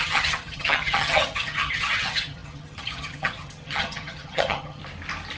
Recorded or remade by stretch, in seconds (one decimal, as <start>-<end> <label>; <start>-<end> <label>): 0.0-4.8 remade; 4.8-5.4 recorded